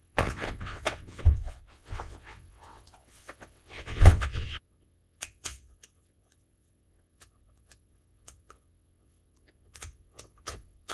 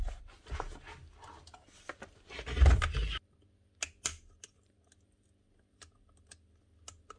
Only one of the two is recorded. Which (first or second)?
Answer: second